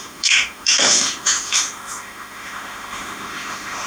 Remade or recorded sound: remade